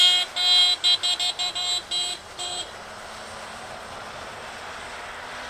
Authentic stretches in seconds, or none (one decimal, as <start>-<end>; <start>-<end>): 0.0-5.5